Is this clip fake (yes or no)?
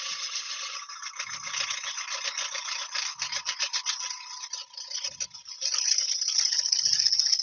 no